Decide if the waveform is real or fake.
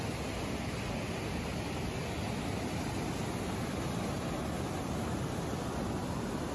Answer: real